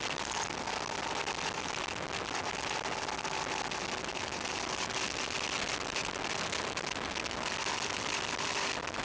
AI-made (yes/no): no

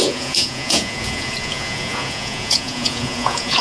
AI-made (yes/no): yes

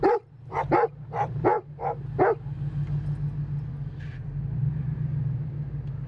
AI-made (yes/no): no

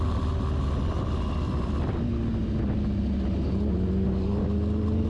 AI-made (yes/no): no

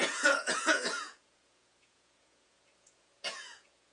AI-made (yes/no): yes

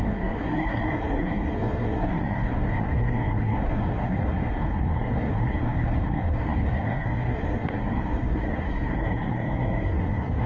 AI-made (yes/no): yes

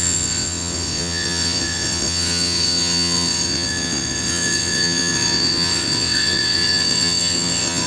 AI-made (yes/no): yes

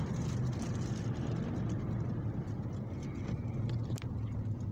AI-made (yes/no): no